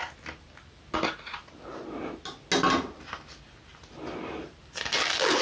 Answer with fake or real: real